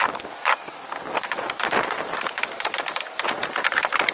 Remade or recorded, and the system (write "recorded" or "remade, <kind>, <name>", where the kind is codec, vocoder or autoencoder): recorded